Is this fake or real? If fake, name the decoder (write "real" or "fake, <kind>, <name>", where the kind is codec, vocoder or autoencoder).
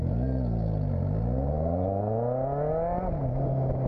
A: real